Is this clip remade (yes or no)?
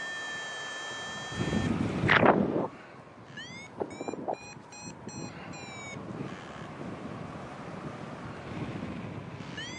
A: no